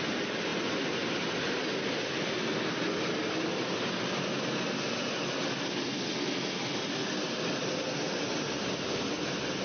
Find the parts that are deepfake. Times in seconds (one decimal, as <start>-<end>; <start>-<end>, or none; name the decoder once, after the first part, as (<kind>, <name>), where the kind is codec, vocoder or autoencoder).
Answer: none